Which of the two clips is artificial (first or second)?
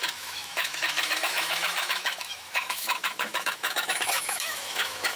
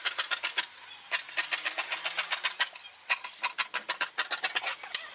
first